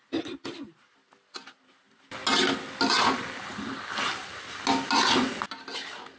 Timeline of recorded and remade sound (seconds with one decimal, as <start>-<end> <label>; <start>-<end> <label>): 0.0-6.2 recorded